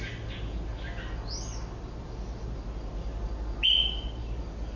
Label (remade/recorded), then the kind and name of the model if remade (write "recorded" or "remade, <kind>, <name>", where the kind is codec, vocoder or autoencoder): recorded